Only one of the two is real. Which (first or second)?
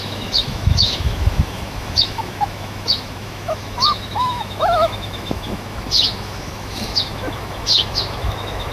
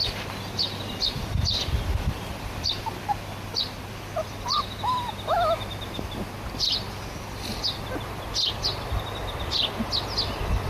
second